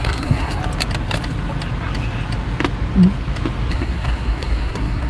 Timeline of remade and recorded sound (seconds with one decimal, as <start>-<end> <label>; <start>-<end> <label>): 0.0-0.6 remade; 0.6-3.7 recorded; 3.7-5.1 remade